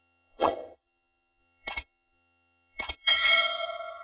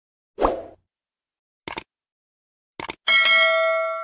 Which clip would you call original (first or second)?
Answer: second